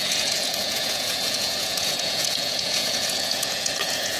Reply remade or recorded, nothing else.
remade